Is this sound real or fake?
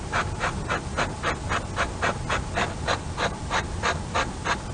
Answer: real